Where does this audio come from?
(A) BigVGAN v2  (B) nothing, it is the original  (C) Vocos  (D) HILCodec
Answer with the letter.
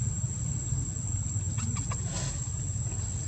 B